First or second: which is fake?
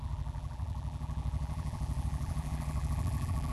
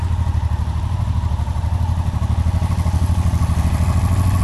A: first